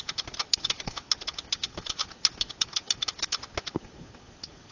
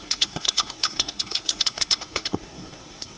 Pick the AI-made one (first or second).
second